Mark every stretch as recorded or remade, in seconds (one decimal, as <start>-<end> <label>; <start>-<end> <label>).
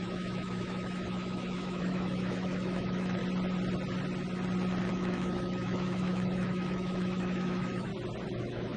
0.0-3.2 remade; 3.2-4.9 recorded; 4.9-7.9 remade; 7.9-8.4 recorded; 8.4-8.8 remade